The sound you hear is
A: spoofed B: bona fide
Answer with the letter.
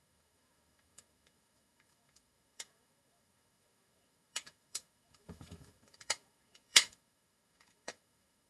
A